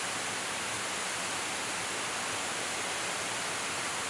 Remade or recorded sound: recorded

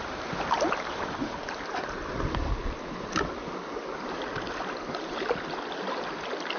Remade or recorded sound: recorded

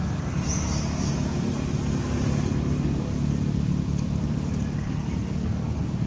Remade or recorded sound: recorded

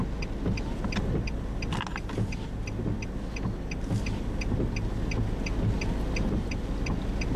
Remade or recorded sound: recorded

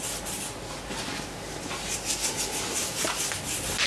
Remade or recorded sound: recorded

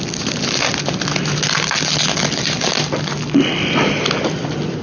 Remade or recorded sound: recorded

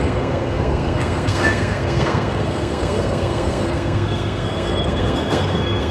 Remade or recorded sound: remade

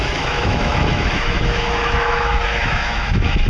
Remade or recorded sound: remade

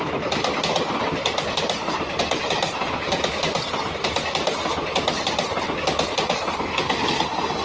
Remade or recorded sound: recorded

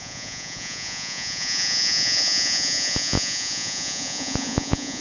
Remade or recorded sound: remade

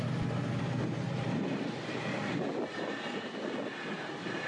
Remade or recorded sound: remade